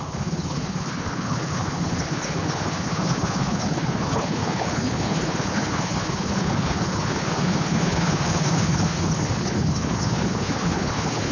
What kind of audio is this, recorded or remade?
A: remade